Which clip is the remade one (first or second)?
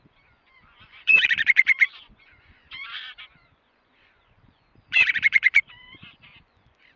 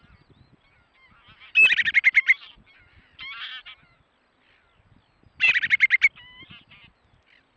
first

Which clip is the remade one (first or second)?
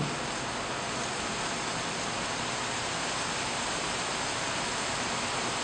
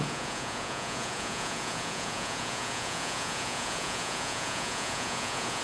second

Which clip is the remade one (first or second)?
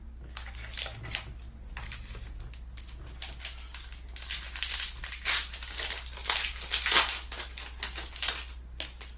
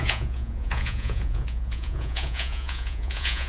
second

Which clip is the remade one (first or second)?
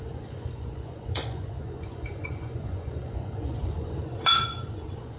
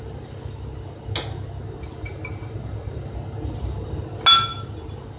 first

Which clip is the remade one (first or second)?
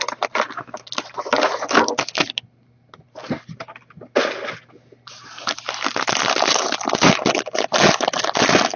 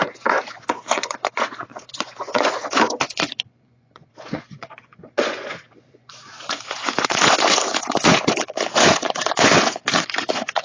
second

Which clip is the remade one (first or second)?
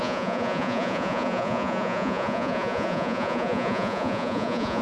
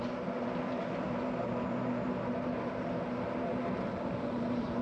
first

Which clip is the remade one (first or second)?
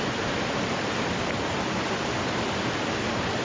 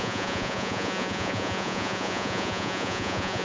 second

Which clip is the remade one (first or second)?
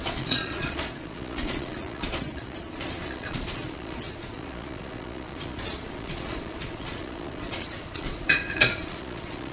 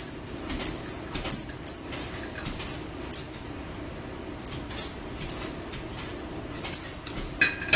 first